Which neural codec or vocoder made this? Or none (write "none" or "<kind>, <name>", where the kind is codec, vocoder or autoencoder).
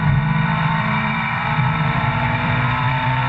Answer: vocoder, BigVGAN v2